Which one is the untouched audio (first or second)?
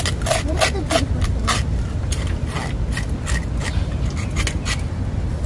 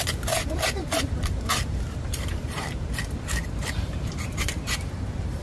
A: first